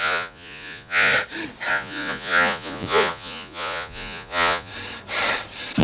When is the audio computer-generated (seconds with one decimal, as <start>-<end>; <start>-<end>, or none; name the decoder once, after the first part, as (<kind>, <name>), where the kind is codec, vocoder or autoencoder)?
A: 0.0-1.1 (vocoder, Vocos); 1.7-4.7